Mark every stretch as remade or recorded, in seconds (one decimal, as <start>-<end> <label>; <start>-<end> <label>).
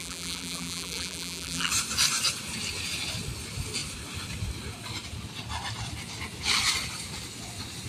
0.0-1.7 remade; 1.7-7.9 recorded